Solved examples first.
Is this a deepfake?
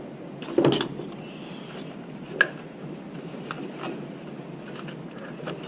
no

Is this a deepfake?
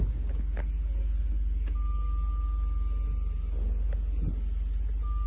no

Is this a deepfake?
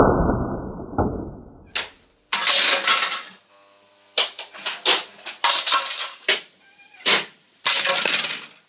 no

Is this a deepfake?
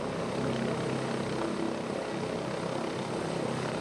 no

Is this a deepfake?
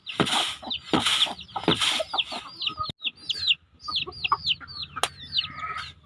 no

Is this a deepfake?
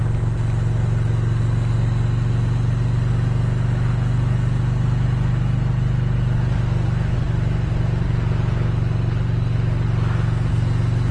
no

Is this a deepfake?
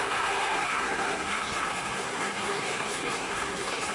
yes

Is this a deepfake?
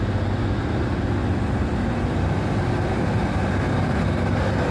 no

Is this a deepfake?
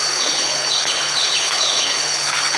yes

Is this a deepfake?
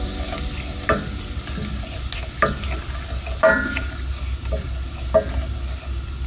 no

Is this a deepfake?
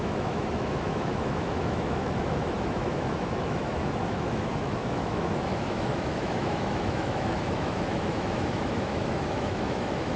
yes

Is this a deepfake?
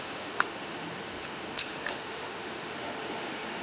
yes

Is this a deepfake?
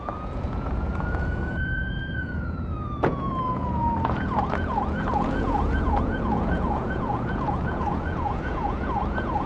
yes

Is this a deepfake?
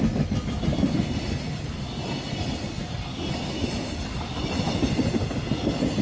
no